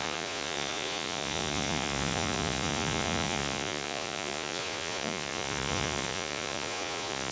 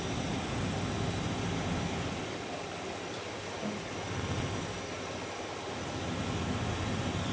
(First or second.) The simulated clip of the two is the first